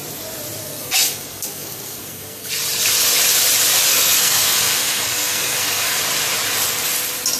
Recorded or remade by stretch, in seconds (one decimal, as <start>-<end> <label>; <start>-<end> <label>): 0.0-0.6 recorded; 0.6-2.5 remade; 2.5-3.9 recorded; 3.9-6.0 remade; 6.0-7.4 recorded